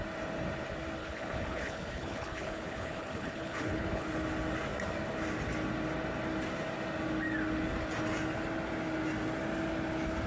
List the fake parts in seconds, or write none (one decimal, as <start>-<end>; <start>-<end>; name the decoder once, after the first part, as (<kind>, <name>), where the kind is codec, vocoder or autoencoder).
1.0-4.1 (codec, HILCodec)